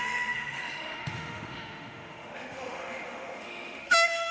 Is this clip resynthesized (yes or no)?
yes